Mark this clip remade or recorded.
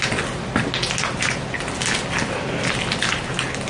recorded